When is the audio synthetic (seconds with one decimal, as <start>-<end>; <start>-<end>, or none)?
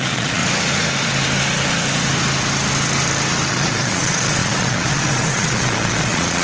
0.0-0.4; 3.5-6.4